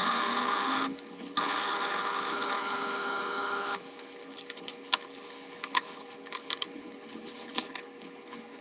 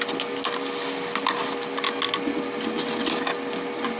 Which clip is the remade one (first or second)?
first